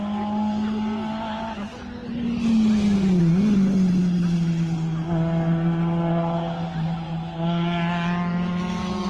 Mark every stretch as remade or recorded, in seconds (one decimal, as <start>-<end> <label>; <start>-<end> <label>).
0.0-9.1 recorded